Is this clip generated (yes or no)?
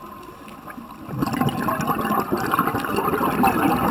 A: no